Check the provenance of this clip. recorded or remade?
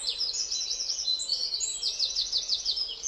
remade